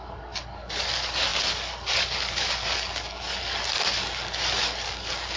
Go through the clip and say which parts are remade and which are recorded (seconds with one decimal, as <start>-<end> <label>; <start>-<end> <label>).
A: 0.0-5.4 remade